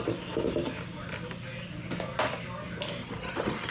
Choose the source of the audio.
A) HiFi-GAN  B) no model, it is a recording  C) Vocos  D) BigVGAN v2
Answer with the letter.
B